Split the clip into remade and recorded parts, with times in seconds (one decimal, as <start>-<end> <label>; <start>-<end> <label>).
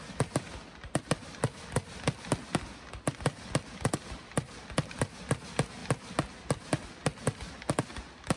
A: 0.0-8.4 recorded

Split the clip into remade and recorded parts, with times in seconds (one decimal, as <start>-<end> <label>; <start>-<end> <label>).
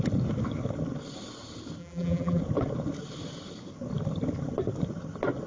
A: 0.0-1.8 recorded; 1.8-2.4 remade; 2.4-5.5 recorded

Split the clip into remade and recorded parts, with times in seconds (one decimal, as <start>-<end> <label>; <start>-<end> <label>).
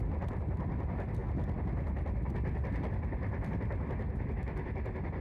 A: 0.0-1.2 remade; 1.2-4.3 recorded; 4.3-5.2 remade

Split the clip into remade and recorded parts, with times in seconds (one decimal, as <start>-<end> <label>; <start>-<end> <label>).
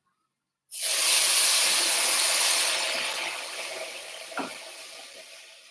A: 0.0-4.5 remade; 4.5-5.1 recorded; 5.1-5.7 remade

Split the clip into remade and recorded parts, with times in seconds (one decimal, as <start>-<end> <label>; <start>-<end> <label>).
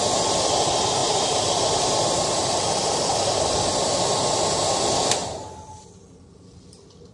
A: 0.0-1.0 recorded; 1.0-4.0 remade; 4.0-5.2 recorded; 5.2-5.9 remade; 5.9-7.1 recorded